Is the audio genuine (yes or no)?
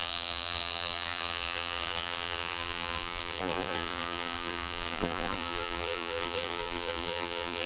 no